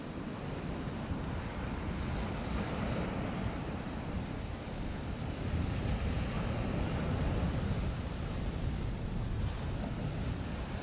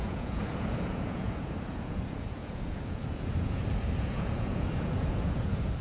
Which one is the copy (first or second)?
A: second